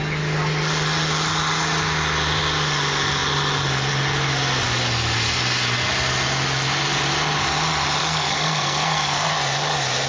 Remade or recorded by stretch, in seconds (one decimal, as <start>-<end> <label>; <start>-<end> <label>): 0.0-8.0 recorded; 8.0-9.3 remade; 9.3-10.1 recorded